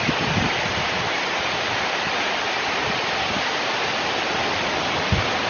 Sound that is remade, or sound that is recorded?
recorded